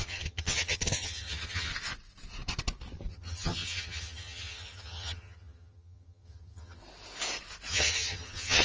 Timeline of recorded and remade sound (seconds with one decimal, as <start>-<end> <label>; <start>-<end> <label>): 0.0-1.7 remade; 1.7-3.1 recorded; 3.1-6.8 remade; 6.8-7.7 recorded; 7.7-8.6 remade